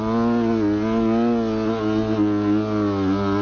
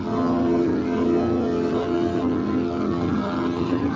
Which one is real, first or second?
first